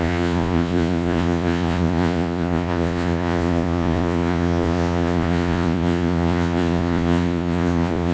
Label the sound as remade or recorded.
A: remade